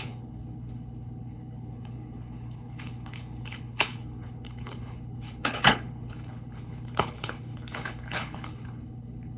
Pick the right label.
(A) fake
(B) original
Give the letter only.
A